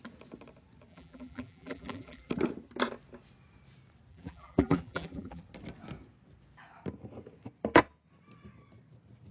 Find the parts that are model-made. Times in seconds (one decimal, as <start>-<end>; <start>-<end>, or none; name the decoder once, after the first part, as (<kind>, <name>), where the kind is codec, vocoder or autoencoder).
0.9-2.3 (vocoder, BigVGAN v2); 4.1-5.4